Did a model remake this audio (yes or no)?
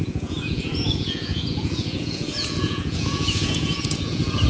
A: yes